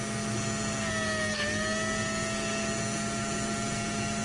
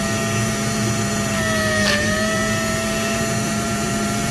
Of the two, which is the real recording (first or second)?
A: first